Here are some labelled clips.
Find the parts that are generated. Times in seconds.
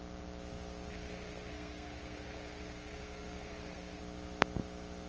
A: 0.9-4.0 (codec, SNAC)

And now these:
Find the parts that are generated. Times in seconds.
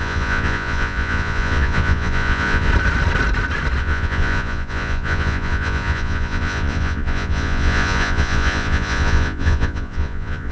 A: 0.0-2.7 (vocoder, Vocos); 3.8-10.5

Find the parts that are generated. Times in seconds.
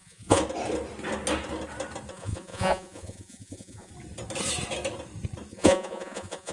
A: 0.0-0.4 (vocoder, Vocos); 2.1-3.9; 5.5-6.5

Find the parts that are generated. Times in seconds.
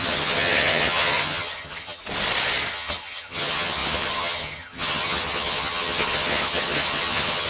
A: 0.0-2.0 (vocoder, HiFi-GAN); 2.7-7.5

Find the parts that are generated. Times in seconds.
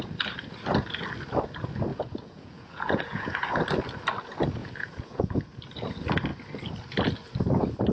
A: 1.9-3.5 (vocoder, Vocos); 4.6-5.4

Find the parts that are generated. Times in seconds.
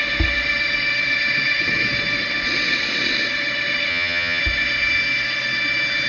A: 3.9-4.4 (vocoder, HiFi-GAN)